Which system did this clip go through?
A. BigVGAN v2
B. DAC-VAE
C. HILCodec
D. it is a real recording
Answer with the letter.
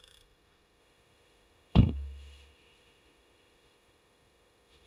B